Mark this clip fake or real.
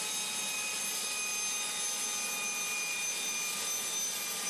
real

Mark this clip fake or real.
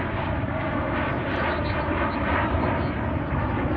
real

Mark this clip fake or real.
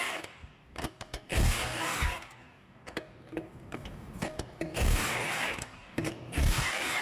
fake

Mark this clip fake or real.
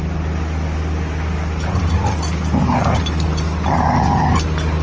real